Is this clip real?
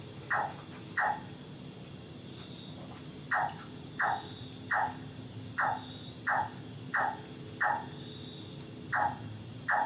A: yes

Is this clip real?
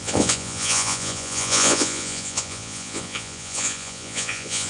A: no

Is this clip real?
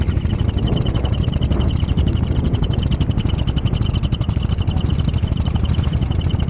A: yes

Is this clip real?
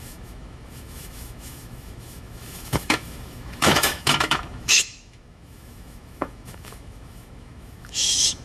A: no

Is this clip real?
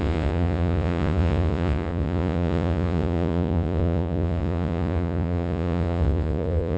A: no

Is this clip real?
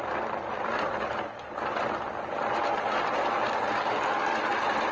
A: yes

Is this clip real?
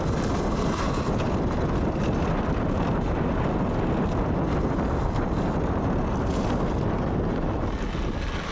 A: yes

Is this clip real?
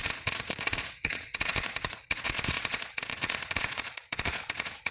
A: no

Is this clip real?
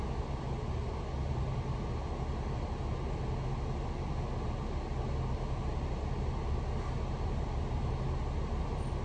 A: yes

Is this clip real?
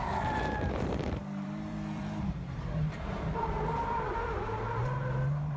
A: no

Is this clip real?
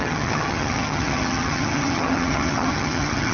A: no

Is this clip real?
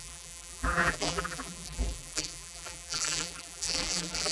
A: no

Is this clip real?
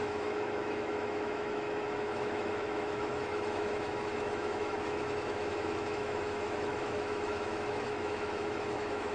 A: no